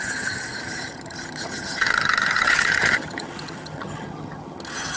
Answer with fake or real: fake